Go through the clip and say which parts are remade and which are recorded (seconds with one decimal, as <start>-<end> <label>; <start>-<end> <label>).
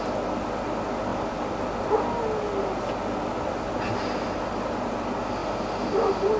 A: 0.0-6.4 recorded